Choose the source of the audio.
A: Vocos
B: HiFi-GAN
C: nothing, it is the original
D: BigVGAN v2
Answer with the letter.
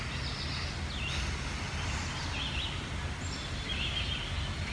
C